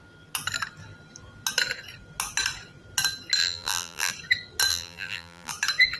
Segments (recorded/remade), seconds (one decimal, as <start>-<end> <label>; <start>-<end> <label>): 0.0-3.4 recorded; 3.4-4.1 remade; 4.1-4.7 recorded; 4.7-5.5 remade; 5.5-6.0 recorded